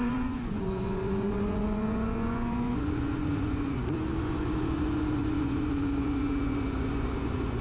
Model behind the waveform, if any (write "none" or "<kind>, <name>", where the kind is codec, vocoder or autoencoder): vocoder, Vocos